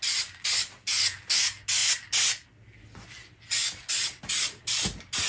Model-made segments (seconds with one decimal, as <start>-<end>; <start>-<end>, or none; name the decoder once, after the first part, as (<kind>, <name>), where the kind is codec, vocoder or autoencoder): none